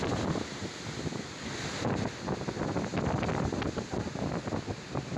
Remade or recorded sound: recorded